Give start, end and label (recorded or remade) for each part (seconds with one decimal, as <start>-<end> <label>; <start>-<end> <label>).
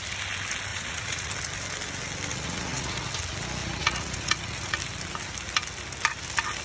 0.0-0.7 recorded; 0.7-1.3 remade; 1.3-2.3 recorded; 2.3-3.1 remade; 3.1-3.6 recorded; 3.6-4.8 remade; 4.8-6.6 recorded